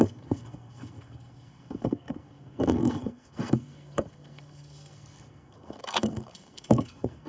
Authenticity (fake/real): fake